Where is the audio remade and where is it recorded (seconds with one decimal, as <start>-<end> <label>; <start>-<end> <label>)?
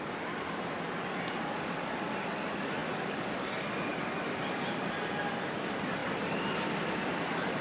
0.0-2.8 recorded; 2.8-3.3 remade; 3.3-3.9 recorded; 3.9-4.6 remade; 4.6-6.0 recorded; 6.0-7.6 remade